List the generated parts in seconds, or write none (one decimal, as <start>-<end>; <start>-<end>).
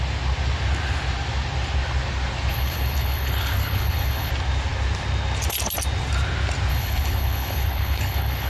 2.5-4.3; 6.7-8.5